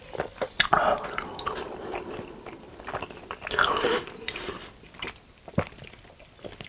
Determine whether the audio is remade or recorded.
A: recorded